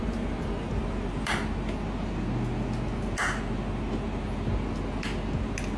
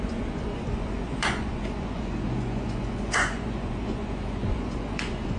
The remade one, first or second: second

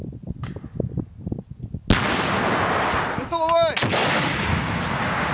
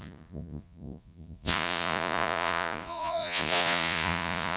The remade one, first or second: second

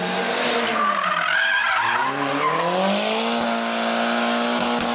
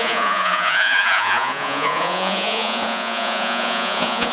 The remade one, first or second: second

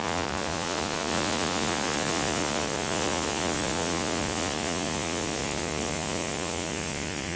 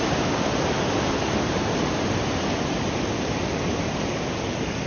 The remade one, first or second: first